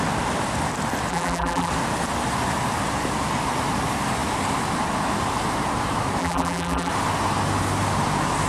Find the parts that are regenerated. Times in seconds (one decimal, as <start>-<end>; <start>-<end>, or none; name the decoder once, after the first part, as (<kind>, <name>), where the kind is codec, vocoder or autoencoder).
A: 1.1-1.7 (vocoder, BigVGAN v2); 6.2-6.9